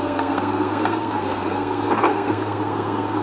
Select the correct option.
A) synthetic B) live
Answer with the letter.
A